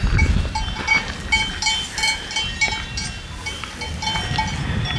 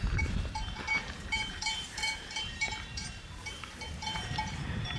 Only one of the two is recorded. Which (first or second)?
first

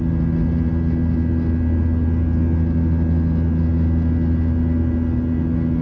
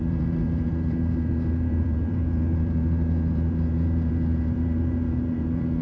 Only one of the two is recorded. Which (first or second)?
first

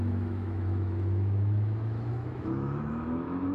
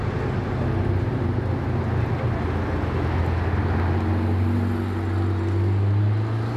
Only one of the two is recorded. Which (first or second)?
second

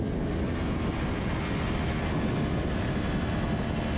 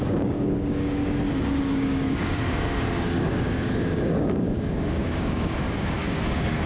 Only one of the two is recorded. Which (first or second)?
first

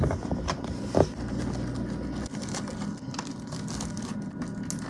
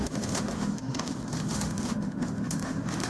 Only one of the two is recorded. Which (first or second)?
first